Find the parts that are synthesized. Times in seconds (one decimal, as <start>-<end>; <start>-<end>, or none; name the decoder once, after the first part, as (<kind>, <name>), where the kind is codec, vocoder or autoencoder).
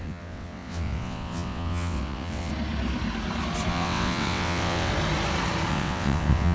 0.0-2.5 (vocoder, WaveNeXt); 3.7-4.9; 5.7-6.5